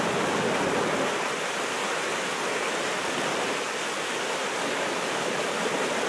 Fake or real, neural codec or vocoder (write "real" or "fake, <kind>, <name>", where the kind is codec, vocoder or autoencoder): real